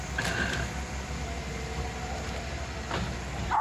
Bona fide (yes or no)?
yes